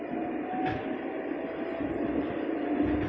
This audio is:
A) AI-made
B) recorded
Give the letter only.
B